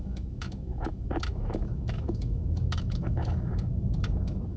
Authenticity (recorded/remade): remade